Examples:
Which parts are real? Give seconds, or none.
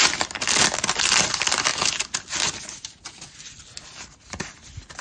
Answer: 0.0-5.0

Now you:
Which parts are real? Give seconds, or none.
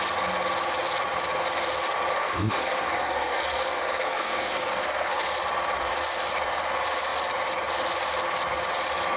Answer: 0.0-2.1; 5.2-9.2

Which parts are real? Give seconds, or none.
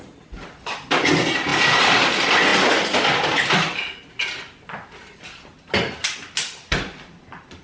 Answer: 0.0-7.6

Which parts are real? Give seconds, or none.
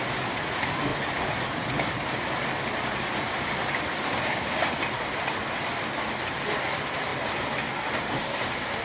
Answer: 0.0-4.1; 4.7-8.8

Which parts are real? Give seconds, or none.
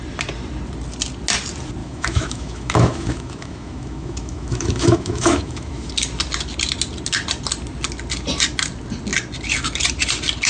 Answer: 0.0-1.8; 5.9-10.5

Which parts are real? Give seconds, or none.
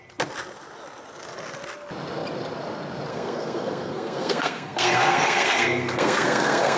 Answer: 0.0-3.1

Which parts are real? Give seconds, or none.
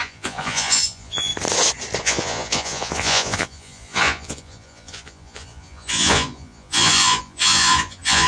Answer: 1.3-2.0